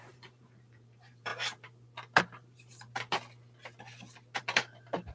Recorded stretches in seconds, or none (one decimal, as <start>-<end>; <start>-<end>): 1.3-2.2; 2.7-4.4